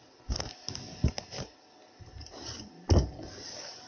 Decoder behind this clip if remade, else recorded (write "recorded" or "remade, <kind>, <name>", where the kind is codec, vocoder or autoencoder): recorded